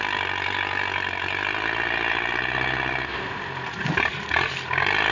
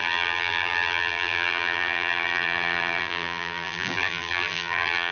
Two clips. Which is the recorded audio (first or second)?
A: first